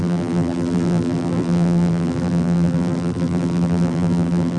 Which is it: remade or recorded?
remade